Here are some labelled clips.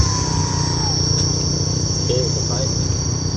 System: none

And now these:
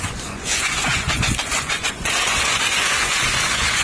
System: vocoder, Vocos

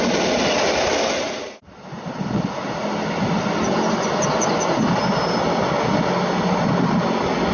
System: none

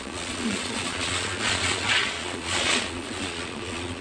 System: vocoder, Vocos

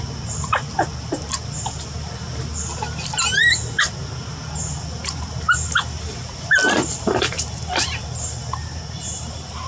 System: vocoder, BigVGAN v2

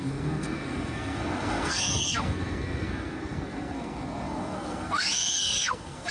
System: codec, SNAC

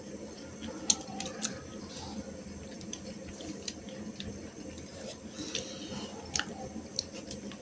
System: none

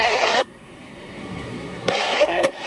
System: codec, SNAC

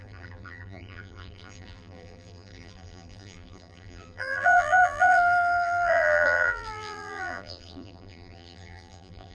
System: vocoder, BigVGAN v2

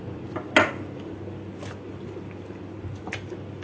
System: none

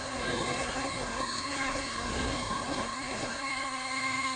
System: codec, SNAC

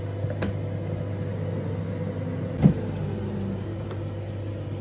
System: none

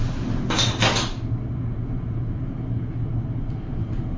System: none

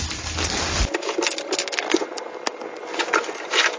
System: none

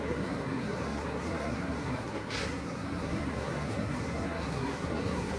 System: codec, SNAC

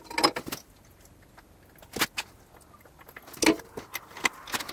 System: none